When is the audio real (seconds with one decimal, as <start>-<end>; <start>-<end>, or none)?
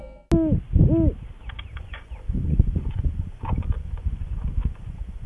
0.0-1.7